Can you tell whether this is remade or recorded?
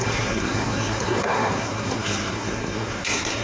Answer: remade